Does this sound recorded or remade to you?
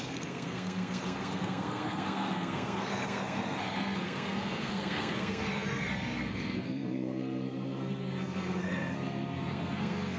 remade